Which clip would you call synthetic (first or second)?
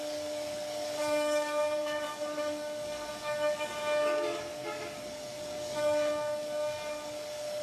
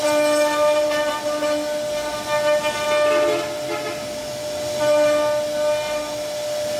first